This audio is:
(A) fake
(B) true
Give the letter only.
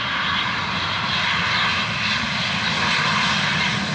B